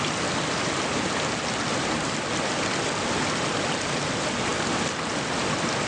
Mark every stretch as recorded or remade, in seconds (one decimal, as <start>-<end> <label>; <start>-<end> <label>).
0.0-5.9 recorded